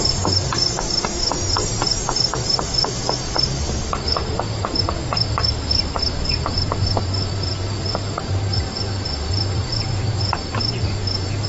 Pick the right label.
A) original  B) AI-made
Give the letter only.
B